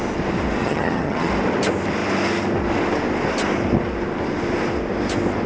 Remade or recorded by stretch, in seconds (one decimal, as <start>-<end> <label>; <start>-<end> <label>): 0.0-0.6 recorded; 0.6-1.3 remade; 1.3-5.5 recorded